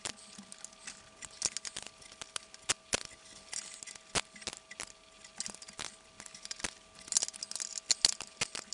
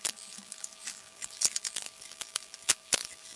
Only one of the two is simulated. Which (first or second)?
second